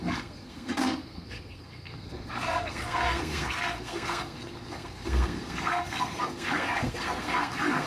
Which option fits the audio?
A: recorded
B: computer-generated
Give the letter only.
B